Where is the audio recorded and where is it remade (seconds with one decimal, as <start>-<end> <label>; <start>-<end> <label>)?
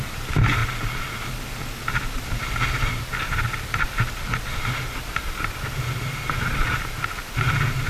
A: 0.0-7.9 recorded